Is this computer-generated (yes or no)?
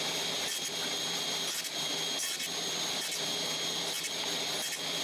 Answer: no